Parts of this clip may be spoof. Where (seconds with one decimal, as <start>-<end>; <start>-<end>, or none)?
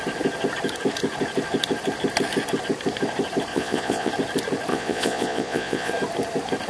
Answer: 3.5-4.1; 4.7-5.9